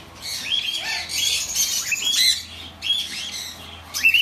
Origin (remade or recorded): recorded